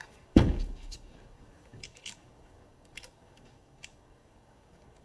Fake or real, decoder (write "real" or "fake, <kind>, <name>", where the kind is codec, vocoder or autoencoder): fake, codec, DAC